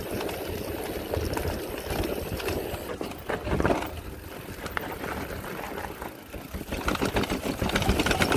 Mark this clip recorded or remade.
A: recorded